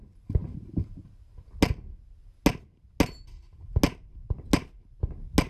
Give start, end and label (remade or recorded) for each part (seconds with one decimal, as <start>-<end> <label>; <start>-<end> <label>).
0.0-5.5 recorded